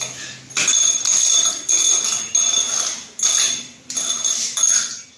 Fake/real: real